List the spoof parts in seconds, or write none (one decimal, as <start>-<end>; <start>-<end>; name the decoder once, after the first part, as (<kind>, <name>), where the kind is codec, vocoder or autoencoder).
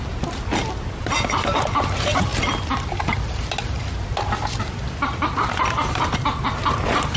none